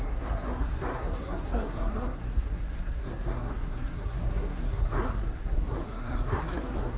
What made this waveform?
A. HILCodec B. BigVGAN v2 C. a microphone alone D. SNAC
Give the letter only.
D